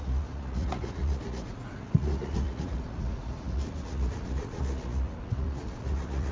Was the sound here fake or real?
fake